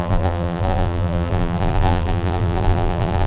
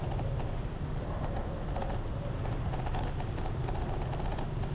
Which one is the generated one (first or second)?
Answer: first